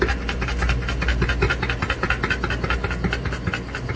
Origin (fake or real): real